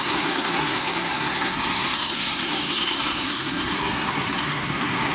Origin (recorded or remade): remade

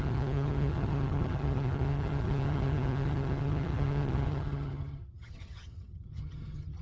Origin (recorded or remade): remade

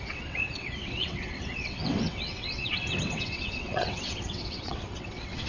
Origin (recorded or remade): remade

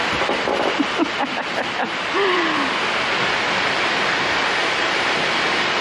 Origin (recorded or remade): remade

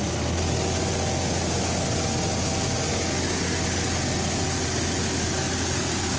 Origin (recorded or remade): recorded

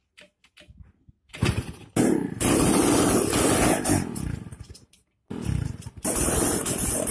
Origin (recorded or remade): recorded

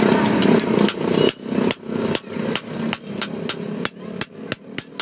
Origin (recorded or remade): recorded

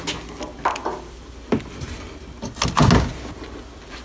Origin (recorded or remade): recorded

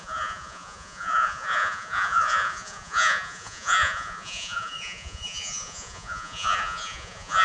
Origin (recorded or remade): remade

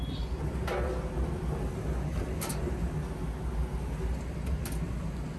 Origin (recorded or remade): recorded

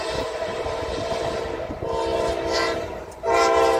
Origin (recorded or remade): recorded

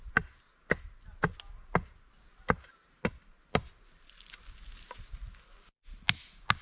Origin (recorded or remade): recorded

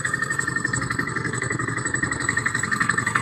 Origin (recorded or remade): remade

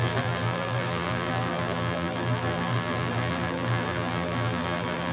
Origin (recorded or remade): remade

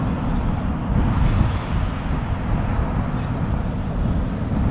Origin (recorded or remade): recorded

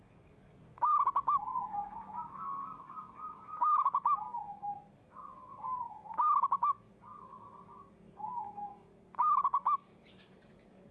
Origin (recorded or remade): remade